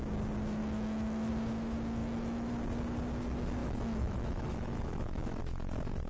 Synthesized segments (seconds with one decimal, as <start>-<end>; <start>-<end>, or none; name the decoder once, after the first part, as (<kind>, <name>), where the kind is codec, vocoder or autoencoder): 0.6-1.3 (autoencoder, DAC-VAE); 2.0-2.5; 3.6-5.4